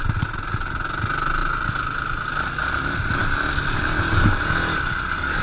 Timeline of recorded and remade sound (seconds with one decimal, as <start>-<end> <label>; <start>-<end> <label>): 0.0-5.4 recorded